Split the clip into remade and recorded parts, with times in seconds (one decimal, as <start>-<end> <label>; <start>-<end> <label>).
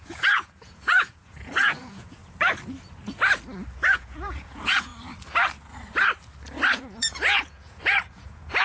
0.0-2.2 remade; 2.2-3.9 recorded; 3.9-4.9 remade; 4.9-6.8 recorded; 6.8-8.6 remade